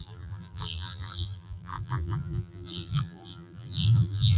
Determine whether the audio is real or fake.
fake